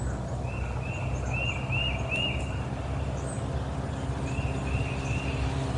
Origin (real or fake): real